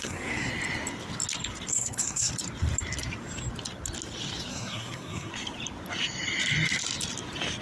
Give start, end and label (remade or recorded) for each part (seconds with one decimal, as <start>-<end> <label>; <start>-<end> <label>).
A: 0.0-0.5 remade; 0.5-1.7 recorded; 1.7-2.3 remade; 2.3-4.5 recorded; 4.5-5.3 remade; 5.3-7.6 recorded